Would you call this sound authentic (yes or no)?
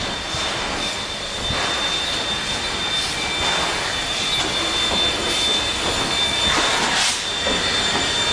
yes